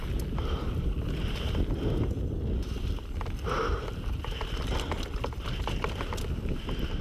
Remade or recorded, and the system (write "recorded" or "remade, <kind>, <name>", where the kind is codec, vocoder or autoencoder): recorded